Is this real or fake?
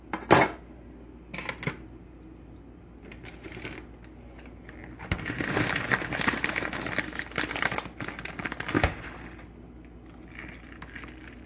real